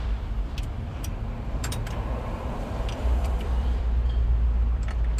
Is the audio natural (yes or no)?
no